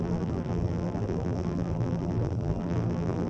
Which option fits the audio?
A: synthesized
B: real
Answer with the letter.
A